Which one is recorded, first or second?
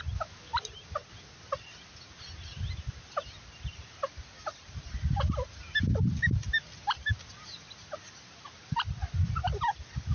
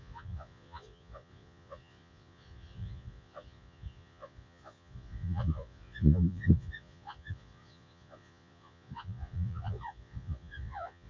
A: first